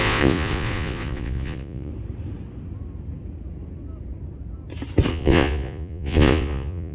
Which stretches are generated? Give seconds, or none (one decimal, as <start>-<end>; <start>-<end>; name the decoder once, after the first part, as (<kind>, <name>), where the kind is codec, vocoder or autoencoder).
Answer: 0.0-1.9 (vocoder, Vocos); 5.1-6.9